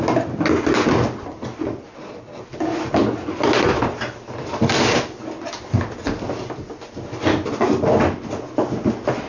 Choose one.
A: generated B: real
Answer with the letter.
B